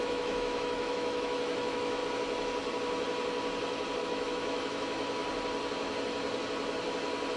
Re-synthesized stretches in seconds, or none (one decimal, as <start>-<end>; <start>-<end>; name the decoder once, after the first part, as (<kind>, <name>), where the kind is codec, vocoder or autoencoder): 0.0-2.0 (autoencoder, DAC-VAE); 4.0-5.2